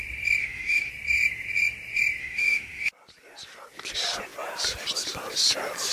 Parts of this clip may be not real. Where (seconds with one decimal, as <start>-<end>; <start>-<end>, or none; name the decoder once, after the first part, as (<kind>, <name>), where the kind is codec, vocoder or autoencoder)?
0.4-0.9 (autoencoder, DAC-VAE); 2.2-2.9